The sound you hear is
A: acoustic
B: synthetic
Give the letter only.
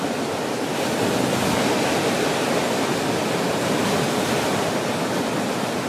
A